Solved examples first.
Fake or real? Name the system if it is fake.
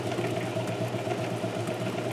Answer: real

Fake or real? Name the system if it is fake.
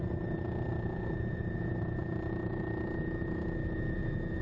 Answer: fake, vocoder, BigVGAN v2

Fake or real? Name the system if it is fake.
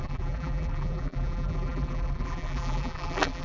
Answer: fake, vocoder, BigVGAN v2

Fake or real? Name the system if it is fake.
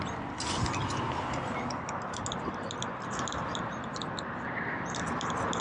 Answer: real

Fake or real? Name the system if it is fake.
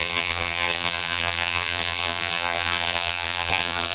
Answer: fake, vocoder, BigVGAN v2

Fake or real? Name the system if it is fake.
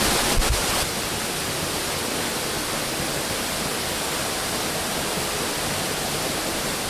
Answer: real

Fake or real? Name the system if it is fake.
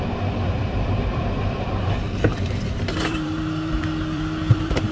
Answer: fake, vocoder, BigVGAN v2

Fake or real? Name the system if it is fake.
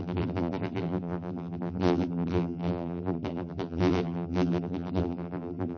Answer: fake, vocoder, BigVGAN v2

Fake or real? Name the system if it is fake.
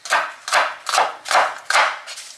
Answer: real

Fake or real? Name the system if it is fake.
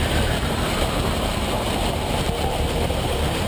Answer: fake, vocoder, BigVGAN v2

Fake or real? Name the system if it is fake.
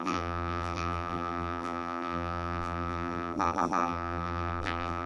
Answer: fake, vocoder, BigVGAN v2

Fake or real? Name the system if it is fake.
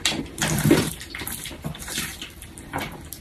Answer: fake, vocoder, BigVGAN v2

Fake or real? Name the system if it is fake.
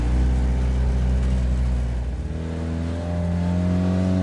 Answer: real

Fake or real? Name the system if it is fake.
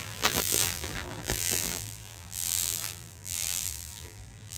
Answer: fake, vocoder, BigVGAN v2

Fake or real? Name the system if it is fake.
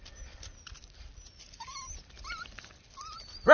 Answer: fake, vocoder, BigVGAN v2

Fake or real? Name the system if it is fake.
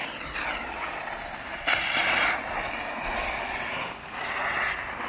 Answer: fake, vocoder, BigVGAN v2